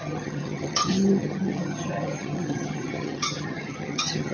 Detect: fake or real fake